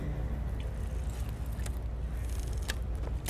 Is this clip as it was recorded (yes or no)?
yes